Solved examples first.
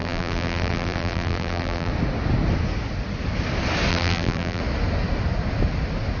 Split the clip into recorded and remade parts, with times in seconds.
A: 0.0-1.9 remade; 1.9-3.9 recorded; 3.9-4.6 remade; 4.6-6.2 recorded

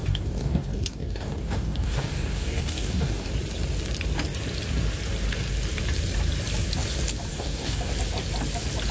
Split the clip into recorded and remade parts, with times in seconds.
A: 0.0-3.3 remade; 3.3-7.3 recorded; 7.3-7.9 remade; 7.9-8.9 recorded

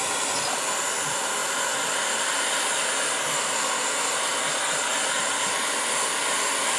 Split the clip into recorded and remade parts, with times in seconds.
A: 0.0-1.4 recorded; 1.4-2.8 remade; 2.8-6.8 recorded

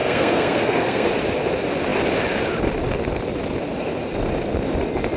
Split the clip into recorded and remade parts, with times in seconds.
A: 0.0-1.1 remade; 1.1-5.2 recorded

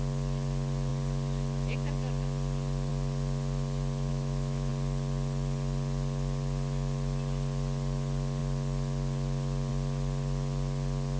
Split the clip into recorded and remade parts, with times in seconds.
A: 0.0-4.1 recorded; 4.1-4.7 remade; 4.7-11.2 recorded